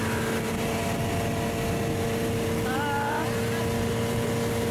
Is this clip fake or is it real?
real